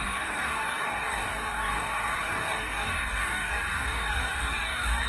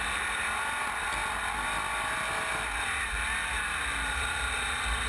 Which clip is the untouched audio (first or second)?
second